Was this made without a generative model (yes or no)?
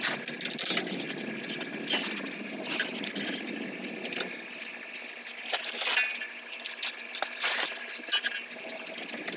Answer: yes